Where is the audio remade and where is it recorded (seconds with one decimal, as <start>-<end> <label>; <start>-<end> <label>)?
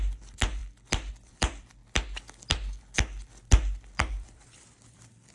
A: 0.0-0.6 remade; 0.6-1.1 recorded; 1.1-1.8 remade; 1.8-4.1 recorded; 4.1-5.3 remade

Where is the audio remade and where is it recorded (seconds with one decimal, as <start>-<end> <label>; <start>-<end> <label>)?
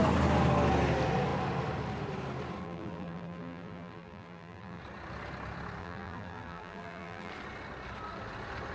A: 0.0-2.6 recorded; 2.6-4.8 remade; 4.8-5.8 recorded; 5.8-7.3 remade; 7.3-8.7 recorded